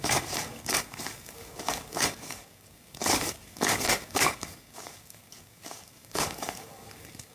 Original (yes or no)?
no